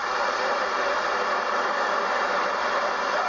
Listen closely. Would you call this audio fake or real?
real